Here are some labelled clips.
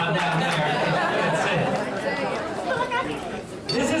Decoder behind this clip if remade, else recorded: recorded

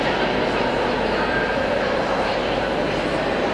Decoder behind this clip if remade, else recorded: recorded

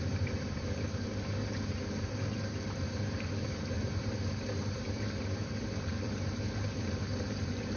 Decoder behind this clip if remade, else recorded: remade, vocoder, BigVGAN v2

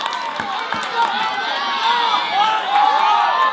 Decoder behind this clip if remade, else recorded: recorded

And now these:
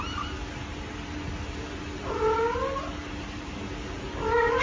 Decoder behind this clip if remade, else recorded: recorded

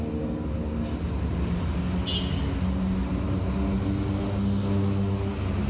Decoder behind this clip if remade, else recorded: recorded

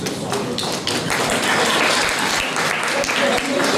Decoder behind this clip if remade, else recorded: recorded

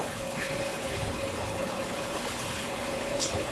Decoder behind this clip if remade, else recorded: remade, codec, HILCodec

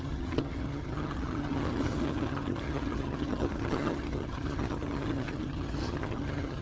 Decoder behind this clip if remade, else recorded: remade, vocoder, HiFi-GAN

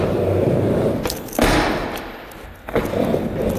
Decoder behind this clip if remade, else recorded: recorded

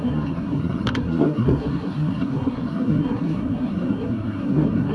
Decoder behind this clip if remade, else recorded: remade, codec, SNAC